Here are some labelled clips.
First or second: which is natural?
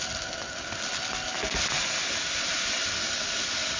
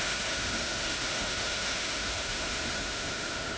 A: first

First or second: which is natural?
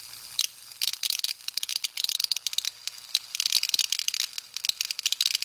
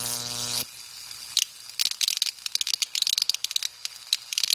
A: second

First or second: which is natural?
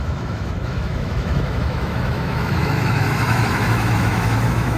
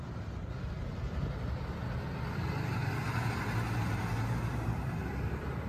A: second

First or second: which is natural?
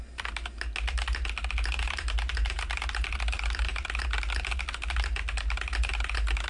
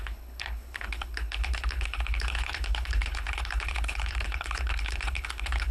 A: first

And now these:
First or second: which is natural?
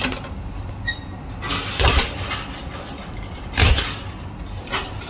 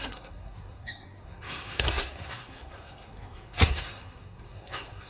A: first